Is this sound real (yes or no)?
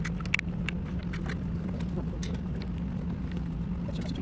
yes